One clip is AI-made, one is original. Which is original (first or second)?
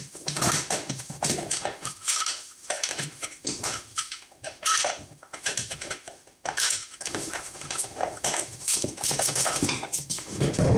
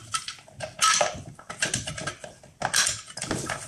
second